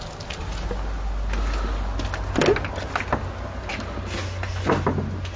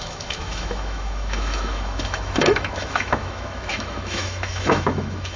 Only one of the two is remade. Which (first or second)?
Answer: second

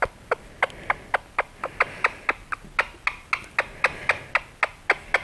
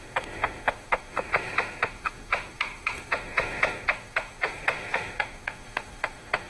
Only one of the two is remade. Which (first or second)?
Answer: second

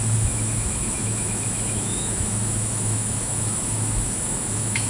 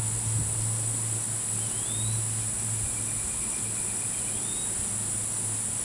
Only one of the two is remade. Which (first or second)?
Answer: first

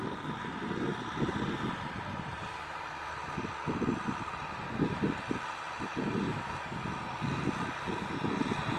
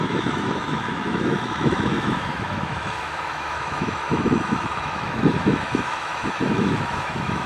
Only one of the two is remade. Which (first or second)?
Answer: second